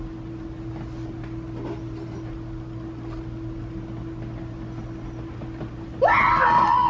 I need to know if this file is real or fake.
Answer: real